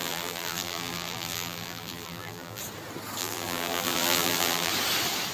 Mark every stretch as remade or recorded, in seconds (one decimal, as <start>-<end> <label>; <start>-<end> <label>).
0.0-2.6 remade; 2.6-3.2 recorded; 3.2-4.7 remade; 4.7-5.3 recorded